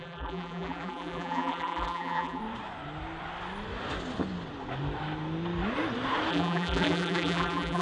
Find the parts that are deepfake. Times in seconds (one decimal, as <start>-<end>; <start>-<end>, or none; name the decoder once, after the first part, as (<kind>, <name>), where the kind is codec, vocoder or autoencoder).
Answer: 0.0-2.4 (vocoder, BigVGAN v2); 6.3-7.8